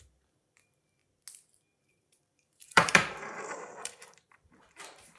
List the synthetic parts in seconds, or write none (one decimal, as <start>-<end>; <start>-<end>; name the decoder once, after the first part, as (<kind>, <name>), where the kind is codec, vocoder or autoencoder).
0.0-1.0 (vocoder, BigVGAN v2); 1.8-5.2